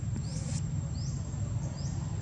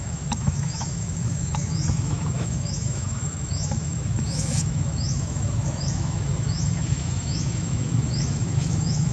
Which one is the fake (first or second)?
second